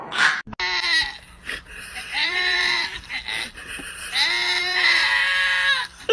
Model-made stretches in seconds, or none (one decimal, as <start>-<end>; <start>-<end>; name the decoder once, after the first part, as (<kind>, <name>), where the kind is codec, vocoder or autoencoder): 2.2-3.1 (vocoder, BigVGAN v2); 4.6-5.2